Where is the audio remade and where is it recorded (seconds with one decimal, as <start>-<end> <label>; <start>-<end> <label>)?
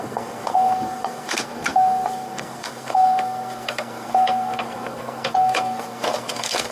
0.0-6.7 remade